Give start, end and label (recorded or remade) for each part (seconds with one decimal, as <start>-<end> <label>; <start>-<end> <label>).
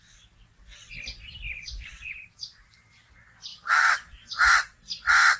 0.0-1.8 recorded; 1.8-3.1 remade; 3.1-3.5 recorded; 3.5-4.5 remade; 4.5-5.4 recorded